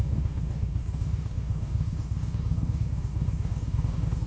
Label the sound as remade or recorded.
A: remade